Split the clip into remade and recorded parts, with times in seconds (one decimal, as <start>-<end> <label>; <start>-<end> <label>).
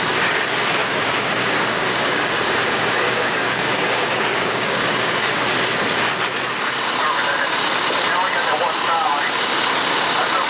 0.0-0.8 recorded; 0.8-5.3 remade; 5.3-10.5 recorded